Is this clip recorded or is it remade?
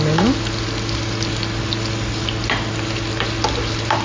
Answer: recorded